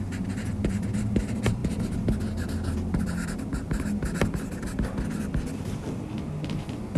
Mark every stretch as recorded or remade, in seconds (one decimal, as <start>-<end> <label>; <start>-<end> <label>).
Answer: 0.0-7.0 recorded

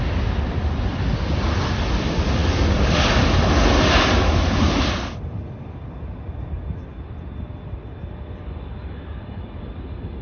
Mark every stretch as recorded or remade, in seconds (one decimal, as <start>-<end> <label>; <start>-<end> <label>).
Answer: 0.0-10.2 recorded

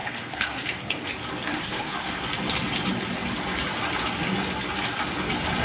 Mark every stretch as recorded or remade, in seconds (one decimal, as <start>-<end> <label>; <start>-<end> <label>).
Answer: 0.0-1.1 remade; 1.1-1.5 recorded; 1.5-2.1 remade; 2.1-5.6 recorded

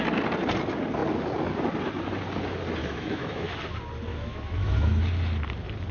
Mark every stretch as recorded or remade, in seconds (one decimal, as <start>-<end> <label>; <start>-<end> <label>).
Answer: 0.0-2.8 recorded; 2.8-3.5 remade; 3.5-4.1 recorded; 4.1-5.0 remade; 5.0-5.9 recorded

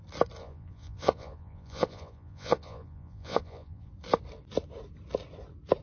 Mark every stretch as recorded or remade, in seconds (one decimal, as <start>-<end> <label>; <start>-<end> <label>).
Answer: 0.0-0.4 recorded; 0.4-3.9 remade; 3.9-5.8 recorded

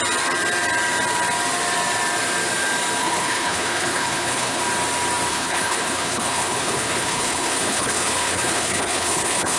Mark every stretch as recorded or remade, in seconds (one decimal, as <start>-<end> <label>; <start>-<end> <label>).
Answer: 0.0-3.0 recorded; 3.0-4.6 remade; 4.6-5.3 recorded; 5.3-9.6 remade

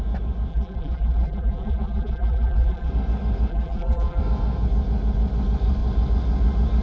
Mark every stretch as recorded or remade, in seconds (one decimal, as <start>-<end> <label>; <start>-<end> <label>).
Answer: 0.0-0.5 recorded; 0.5-2.9 remade; 2.9-3.5 recorded; 3.5-4.2 remade; 4.2-6.8 recorded